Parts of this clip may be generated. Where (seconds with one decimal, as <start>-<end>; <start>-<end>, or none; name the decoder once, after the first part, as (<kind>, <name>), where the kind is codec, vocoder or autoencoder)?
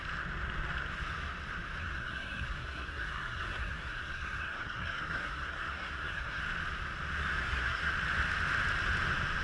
1.8-6.4 (codec, SNAC); 7.4-7.9